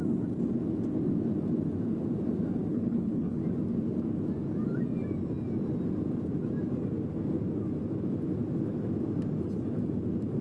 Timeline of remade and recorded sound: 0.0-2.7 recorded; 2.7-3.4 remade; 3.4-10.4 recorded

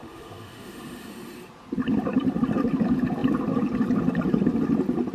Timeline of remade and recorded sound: 0.0-1.1 remade; 1.1-5.1 recorded

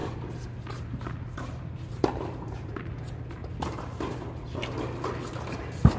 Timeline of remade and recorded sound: 0.0-2.7 remade; 2.7-6.0 recorded

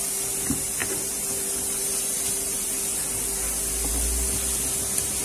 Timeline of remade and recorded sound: 0.0-5.2 recorded

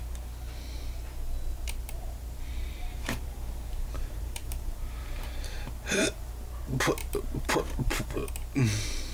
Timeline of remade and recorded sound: 0.0-2.9 recorded; 2.9-6.3 remade; 6.3-7.0 recorded; 7.0-8.3 remade; 8.3-9.1 recorded